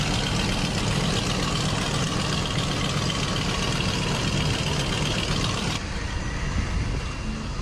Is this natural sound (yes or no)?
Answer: yes